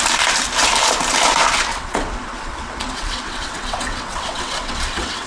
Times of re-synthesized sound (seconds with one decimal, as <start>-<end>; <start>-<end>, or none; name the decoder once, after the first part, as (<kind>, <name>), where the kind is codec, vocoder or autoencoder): 1.7-5.3 (vocoder, WaveNeXt)